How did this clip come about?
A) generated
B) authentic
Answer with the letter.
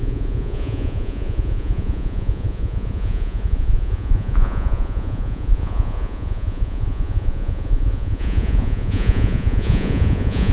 A